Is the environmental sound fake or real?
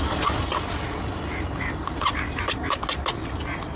real